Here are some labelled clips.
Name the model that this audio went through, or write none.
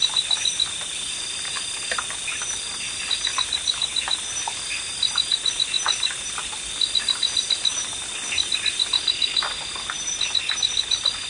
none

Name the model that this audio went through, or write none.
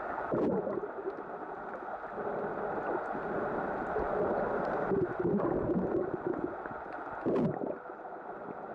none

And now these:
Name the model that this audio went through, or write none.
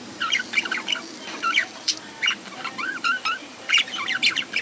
vocoder, BigVGAN v2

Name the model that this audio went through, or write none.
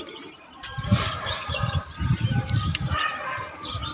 vocoder, BigVGAN v2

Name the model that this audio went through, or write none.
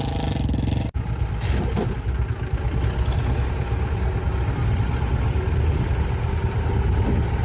none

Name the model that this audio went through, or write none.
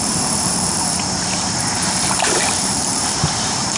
vocoder, BigVGAN v2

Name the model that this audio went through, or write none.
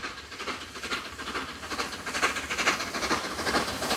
none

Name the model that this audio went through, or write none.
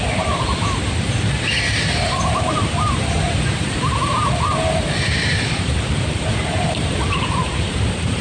vocoder, BigVGAN v2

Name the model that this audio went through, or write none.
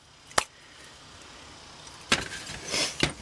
none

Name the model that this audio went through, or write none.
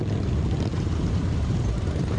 vocoder, BigVGAN v2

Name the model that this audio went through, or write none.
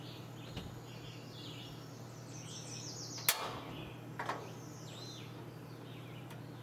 none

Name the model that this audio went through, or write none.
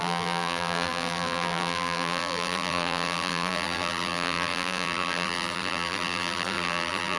vocoder, BigVGAN v2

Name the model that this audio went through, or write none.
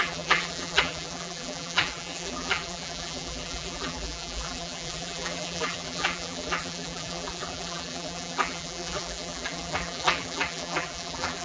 vocoder, BigVGAN v2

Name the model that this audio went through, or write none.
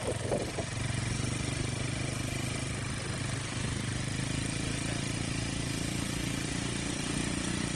none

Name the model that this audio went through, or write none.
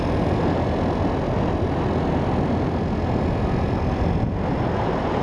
none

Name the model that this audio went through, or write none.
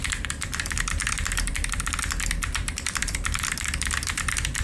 vocoder, BigVGAN v2